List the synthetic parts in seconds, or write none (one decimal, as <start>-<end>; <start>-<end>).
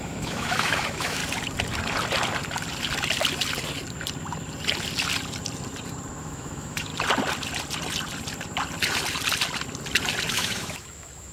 0.0-1.2; 6.2-6.9; 10.3-11.3